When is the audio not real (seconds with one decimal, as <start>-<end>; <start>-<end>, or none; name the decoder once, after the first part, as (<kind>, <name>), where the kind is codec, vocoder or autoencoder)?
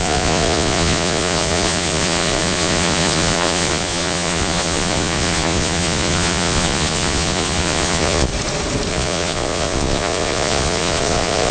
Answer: 0.0-8.3 (vocoder, Vocos); 8.9-11.5